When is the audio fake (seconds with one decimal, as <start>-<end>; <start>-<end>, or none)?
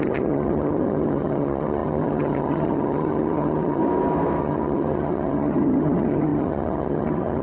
0.0-3.8; 4.4-7.4